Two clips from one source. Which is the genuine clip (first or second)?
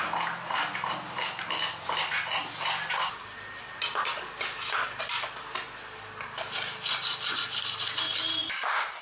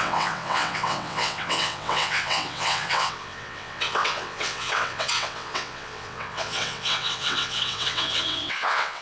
first